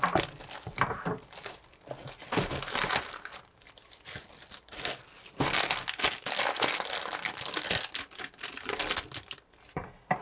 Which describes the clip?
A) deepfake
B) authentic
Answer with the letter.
B